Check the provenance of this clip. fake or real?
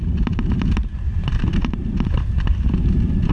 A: fake